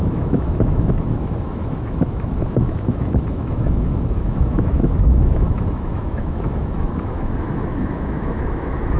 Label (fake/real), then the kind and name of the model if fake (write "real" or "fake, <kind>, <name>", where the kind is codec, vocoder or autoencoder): fake, autoencoder, DAC-VAE